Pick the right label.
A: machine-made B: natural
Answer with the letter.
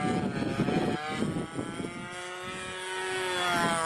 B